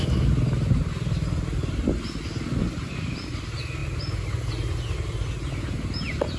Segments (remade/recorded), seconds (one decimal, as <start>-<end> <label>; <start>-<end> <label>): 0.0-6.4 recorded